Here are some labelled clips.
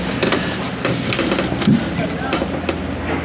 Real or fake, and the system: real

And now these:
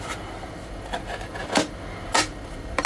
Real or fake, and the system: real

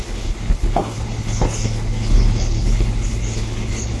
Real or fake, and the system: fake, codec, HILCodec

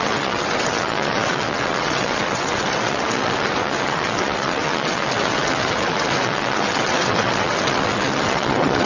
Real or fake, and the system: fake, vocoder, WaveNeXt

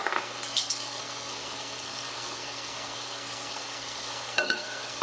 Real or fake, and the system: fake, codec, SNAC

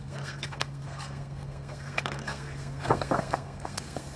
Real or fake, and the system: fake, codec, SNAC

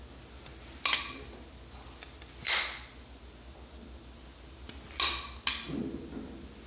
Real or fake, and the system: real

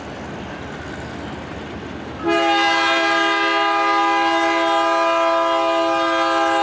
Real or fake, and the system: real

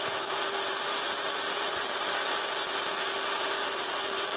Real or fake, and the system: fake, vocoder, BigVGAN v2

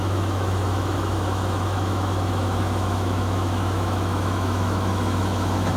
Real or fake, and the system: fake, autoencoder, DAC-VAE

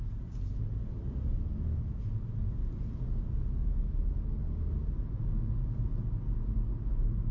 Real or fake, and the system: real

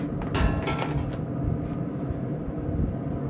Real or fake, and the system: real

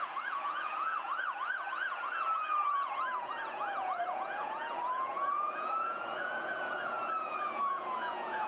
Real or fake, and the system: fake, vocoder, Vocos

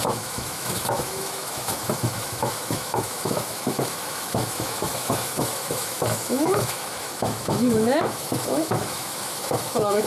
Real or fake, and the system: fake, autoencoder, DAC-VAE